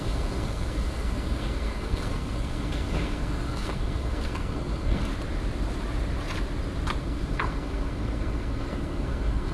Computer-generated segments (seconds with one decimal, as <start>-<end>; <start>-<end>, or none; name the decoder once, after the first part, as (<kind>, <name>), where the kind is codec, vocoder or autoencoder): 0.0-5.1 (codec, SNAC); 7.0-9.5